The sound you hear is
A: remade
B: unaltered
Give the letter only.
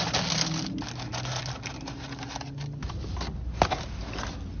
B